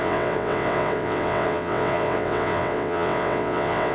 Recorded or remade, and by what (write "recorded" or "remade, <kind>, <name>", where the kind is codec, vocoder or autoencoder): remade, vocoder, WaveNeXt